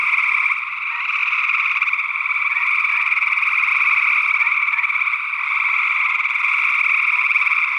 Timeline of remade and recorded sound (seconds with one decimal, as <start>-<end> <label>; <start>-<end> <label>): 0.0-7.8 recorded